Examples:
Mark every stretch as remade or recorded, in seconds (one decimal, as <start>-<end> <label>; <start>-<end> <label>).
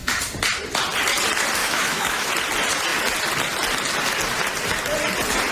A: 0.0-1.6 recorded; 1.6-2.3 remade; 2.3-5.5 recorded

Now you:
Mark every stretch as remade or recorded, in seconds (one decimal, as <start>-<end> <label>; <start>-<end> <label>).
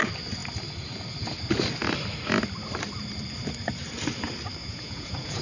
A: 0.0-4.6 recorded; 4.6-5.4 remade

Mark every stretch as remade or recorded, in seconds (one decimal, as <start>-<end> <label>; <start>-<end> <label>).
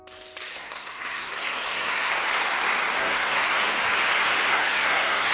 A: 0.0-0.5 recorded; 0.5-2.1 remade; 2.1-3.0 recorded; 3.0-3.6 remade; 3.6-4.5 recorded; 4.5-5.3 remade